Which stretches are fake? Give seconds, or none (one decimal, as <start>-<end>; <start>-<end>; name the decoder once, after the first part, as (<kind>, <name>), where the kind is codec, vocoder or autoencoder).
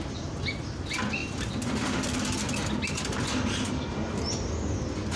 none